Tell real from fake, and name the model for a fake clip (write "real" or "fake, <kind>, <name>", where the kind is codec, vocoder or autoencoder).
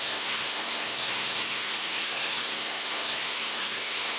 fake, codec, SNAC